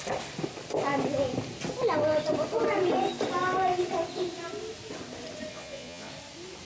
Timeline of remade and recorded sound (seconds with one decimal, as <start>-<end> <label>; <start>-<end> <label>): 0.0-5.5 recorded; 5.5-6.1 remade; 6.1-6.6 recorded